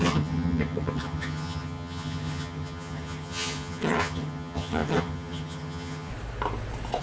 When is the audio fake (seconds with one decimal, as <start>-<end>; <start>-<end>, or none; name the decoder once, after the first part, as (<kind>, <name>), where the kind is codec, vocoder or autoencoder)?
0.0-6.1 (vocoder, HiFi-GAN)